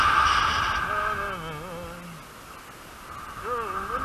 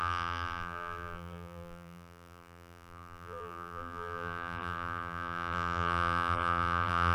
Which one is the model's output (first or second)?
second